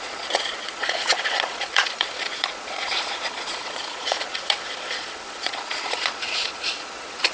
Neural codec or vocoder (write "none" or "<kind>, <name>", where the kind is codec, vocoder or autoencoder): vocoder, Vocos